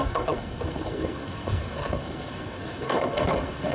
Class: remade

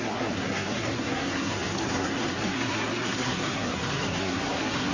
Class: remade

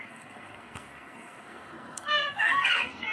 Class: remade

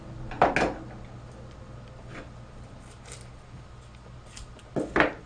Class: recorded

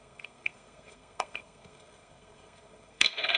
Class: remade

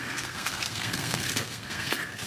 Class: remade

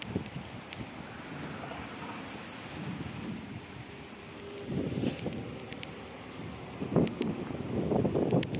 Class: recorded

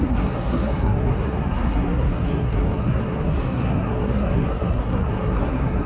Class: remade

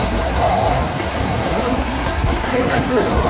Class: remade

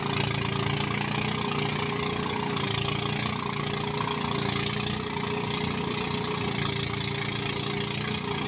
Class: recorded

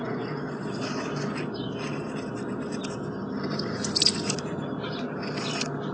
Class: recorded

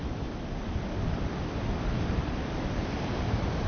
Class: recorded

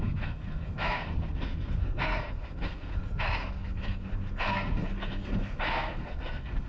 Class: remade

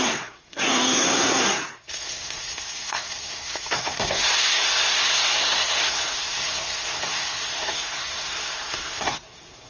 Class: remade